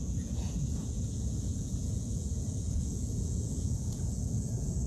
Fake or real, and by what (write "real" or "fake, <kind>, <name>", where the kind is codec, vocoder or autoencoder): fake, vocoder, Vocos